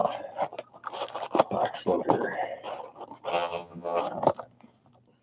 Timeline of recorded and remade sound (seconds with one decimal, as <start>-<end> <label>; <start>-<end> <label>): 0.0-3.3 recorded; 3.3-4.0 remade; 4.0-5.2 recorded